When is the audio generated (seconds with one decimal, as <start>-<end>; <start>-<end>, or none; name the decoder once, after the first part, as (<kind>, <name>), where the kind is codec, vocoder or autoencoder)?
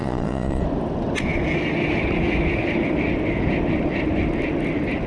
0.0-0.6 (vocoder, Vocos)